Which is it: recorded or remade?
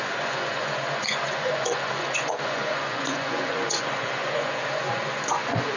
remade